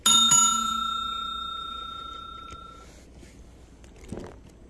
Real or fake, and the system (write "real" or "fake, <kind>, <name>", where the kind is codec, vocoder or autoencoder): real